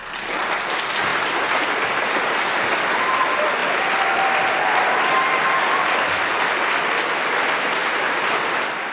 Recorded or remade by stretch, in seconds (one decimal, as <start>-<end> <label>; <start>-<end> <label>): 0.0-7.8 recorded; 7.8-8.9 remade